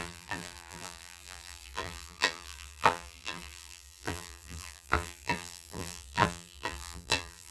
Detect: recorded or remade remade